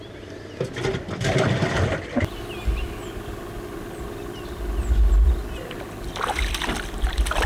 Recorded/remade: recorded